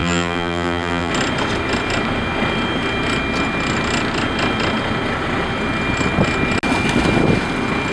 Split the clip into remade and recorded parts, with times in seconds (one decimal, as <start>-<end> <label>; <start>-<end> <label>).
0.0-1.1 remade; 1.1-7.9 recorded